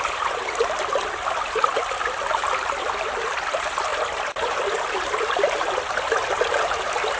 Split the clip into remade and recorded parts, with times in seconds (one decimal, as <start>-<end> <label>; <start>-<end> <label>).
0.0-7.2 recorded